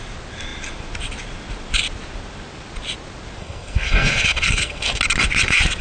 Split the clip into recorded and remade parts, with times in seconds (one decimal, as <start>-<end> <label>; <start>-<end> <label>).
0.0-3.4 recorded; 3.4-5.0 remade; 5.0-5.8 recorded

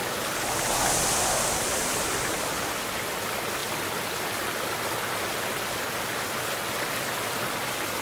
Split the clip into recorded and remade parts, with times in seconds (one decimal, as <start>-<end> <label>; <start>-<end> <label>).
0.0-8.0 recorded

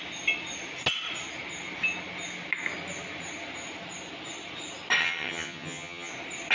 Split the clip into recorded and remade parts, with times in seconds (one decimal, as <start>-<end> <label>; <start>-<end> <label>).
0.0-5.0 recorded; 5.0-6.1 remade; 6.1-6.5 recorded

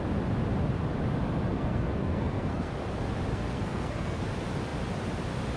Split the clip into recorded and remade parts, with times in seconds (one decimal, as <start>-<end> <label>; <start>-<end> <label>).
0.0-1.5 recorded; 1.5-2.7 remade; 2.7-3.3 recorded; 3.3-4.2 remade; 4.2-5.6 recorded